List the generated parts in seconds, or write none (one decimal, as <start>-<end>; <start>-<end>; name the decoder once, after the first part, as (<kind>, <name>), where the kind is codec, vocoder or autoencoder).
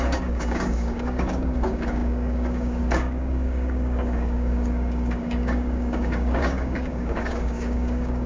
0.0-8.3 (codec, DAC)